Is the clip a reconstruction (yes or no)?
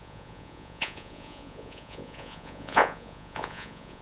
yes